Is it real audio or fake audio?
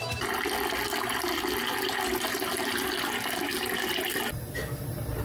real